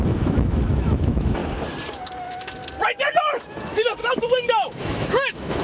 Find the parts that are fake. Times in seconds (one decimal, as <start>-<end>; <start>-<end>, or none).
0.0-1.4; 2.2-2.6; 3.3-5.6